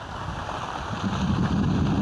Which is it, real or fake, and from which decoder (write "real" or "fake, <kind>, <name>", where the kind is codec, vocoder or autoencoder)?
real